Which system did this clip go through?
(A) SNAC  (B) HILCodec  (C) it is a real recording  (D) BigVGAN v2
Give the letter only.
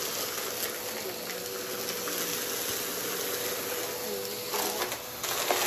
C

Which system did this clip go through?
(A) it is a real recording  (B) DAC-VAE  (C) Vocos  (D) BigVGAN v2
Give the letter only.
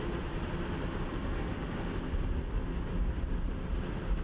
A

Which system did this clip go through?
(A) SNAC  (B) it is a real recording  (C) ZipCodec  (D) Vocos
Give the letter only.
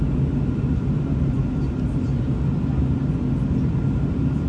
B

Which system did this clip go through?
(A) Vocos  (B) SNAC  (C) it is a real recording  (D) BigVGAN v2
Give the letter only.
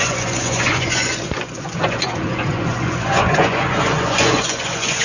A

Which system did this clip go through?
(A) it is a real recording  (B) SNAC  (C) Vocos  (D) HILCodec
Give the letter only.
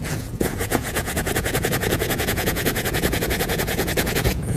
C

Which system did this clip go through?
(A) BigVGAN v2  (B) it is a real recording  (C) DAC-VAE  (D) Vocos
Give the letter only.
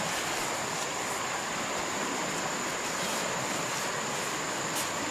B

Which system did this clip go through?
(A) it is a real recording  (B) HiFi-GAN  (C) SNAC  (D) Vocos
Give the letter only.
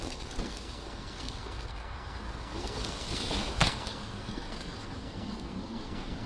C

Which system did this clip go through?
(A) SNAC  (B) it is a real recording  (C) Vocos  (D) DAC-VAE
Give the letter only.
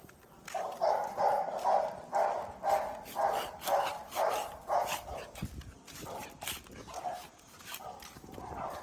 B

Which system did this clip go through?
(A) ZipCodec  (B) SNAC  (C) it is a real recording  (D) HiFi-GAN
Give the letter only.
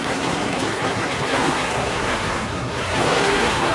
B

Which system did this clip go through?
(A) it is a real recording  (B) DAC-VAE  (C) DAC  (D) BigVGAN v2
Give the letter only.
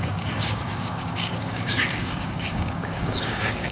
C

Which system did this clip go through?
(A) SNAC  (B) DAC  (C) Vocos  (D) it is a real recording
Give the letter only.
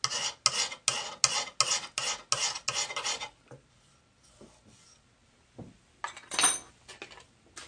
D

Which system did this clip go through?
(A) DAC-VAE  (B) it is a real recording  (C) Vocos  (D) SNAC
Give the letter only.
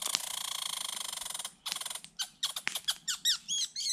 B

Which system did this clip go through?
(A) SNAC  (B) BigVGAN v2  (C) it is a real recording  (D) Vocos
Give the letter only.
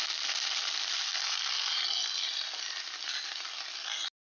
C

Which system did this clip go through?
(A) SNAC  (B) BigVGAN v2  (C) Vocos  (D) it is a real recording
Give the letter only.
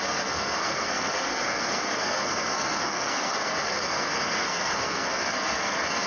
A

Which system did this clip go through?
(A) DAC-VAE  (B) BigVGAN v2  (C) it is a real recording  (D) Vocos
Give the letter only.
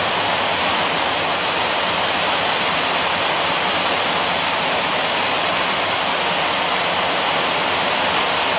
C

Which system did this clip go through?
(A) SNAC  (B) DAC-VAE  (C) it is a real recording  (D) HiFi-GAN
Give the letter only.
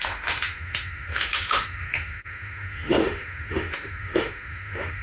B